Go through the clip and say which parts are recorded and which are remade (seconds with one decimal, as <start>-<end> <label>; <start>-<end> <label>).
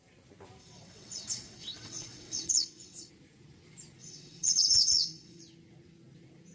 0.0-0.6 recorded; 0.6-3.1 remade; 3.1-4.0 recorded; 4.0-5.4 remade; 5.4-6.5 recorded